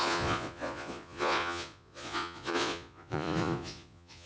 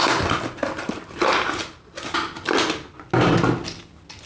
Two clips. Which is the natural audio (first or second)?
second